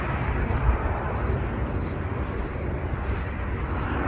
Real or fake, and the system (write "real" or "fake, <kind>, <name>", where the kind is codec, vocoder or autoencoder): real